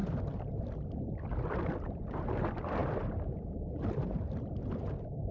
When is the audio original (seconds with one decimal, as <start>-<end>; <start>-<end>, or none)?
0.0-5.3